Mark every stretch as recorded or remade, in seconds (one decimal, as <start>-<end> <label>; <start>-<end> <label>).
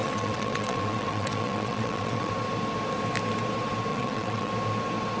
0.0-2.3 remade; 2.3-3.9 recorded; 3.9-4.5 remade; 4.5-5.2 recorded